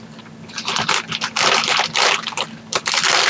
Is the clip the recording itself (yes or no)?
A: yes